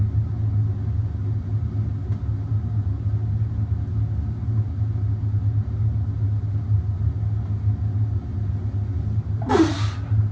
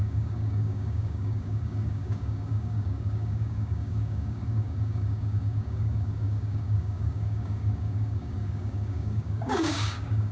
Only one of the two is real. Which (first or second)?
first